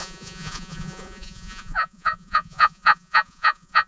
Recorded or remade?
remade